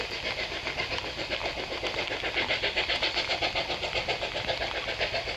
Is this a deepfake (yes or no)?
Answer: no